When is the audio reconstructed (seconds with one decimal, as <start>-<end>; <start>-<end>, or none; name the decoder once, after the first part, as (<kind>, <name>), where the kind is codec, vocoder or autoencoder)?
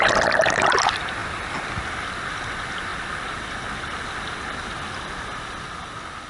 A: none